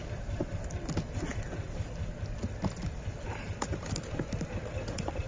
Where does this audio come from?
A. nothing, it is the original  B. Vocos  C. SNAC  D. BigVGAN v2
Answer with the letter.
A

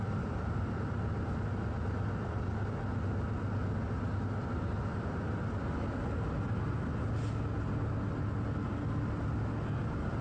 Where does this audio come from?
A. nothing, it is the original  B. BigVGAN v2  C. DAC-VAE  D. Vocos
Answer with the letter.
A